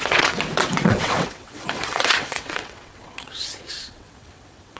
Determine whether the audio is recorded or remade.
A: remade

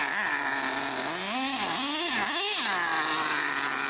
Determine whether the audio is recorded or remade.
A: recorded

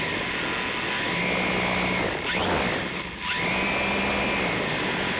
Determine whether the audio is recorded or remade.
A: recorded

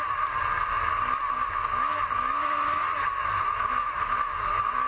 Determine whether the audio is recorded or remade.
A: recorded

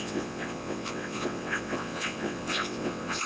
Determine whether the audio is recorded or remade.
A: remade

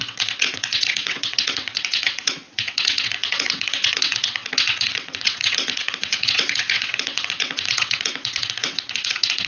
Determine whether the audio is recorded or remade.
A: remade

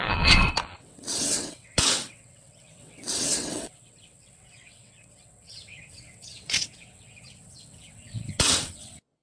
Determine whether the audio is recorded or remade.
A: remade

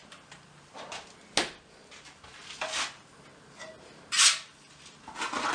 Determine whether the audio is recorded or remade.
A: recorded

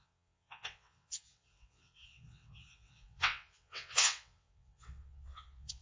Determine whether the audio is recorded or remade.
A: remade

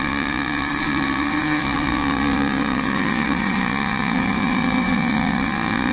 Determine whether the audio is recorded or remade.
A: remade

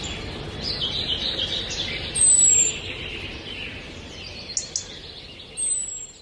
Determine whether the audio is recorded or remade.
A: recorded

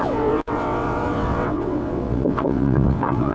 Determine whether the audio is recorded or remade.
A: remade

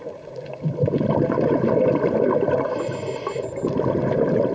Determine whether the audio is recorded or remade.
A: recorded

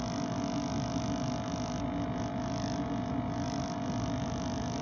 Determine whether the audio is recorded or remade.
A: recorded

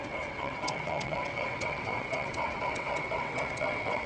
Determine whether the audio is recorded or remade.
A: remade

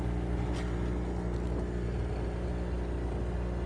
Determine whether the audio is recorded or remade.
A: recorded